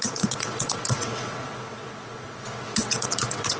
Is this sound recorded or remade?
remade